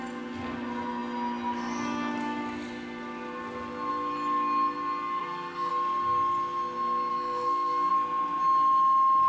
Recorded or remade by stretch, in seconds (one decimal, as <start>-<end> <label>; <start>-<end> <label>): 0.0-5.2 recorded; 5.2-5.7 remade; 5.7-7.1 recorded; 7.1-7.9 remade; 7.9-9.3 recorded